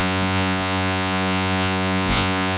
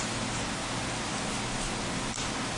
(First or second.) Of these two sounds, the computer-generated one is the first